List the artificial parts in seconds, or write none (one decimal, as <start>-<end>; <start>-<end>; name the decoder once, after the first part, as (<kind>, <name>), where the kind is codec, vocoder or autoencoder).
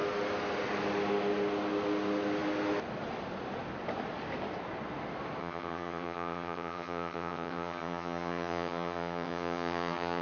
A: 5.4-10.2 (vocoder, HiFi-GAN)